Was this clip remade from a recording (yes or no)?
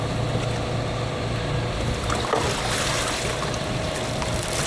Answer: no